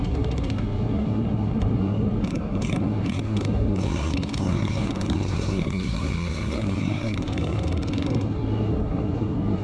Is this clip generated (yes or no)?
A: yes